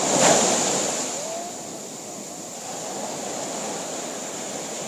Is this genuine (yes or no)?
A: yes